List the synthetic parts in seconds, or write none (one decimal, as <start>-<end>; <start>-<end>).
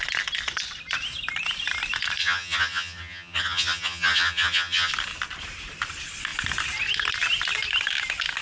2.2-4.9